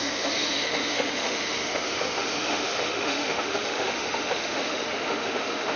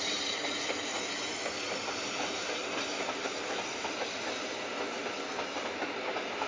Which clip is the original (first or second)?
second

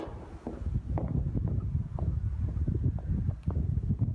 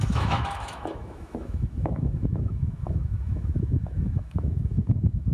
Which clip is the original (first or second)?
first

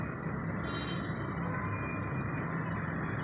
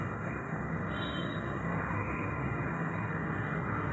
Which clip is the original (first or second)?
first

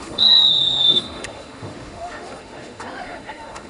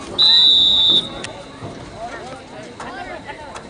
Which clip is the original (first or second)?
second